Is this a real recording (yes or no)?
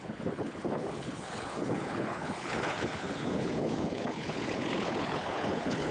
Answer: no